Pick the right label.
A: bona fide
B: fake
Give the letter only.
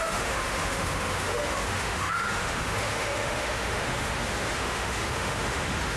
B